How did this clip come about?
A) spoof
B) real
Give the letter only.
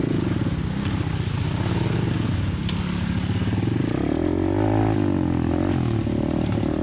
B